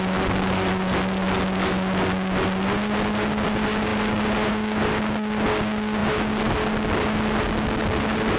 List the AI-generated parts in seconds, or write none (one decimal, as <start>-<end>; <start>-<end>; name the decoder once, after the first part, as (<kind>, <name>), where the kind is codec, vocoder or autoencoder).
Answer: none